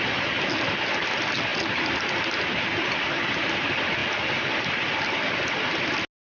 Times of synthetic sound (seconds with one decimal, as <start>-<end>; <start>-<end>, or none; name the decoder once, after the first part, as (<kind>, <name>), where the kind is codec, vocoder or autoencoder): none